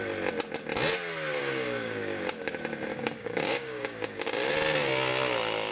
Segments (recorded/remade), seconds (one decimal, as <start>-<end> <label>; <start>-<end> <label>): 0.0-1.4 recorded; 1.4-2.5 remade; 2.5-2.9 recorded; 2.9-4.5 remade; 4.5-5.7 recorded